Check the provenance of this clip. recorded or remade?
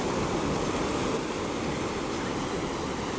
recorded